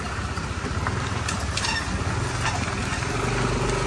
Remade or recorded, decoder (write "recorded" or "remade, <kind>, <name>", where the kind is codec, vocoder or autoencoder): recorded